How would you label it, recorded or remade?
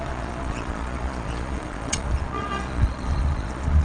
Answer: remade